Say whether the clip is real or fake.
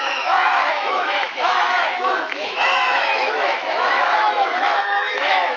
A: fake